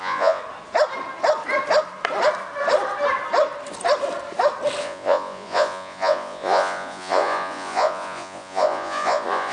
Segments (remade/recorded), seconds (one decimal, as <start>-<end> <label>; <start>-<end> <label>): 0.0-0.4 remade; 0.4-4.8 recorded; 4.8-9.5 remade